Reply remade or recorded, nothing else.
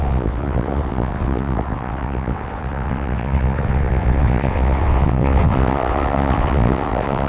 remade